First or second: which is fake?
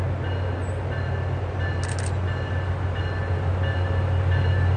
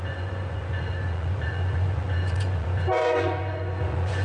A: second